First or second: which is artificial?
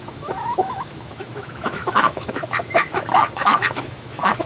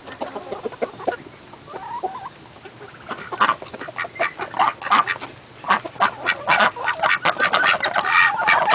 first